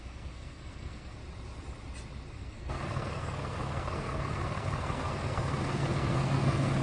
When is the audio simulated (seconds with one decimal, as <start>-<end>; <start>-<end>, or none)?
0.0-1.2; 2.3-6.8